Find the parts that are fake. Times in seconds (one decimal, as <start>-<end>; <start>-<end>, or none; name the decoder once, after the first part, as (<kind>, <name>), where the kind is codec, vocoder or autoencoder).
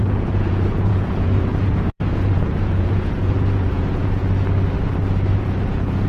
0.0-4.2 (vocoder, Vocos); 5.4-6.1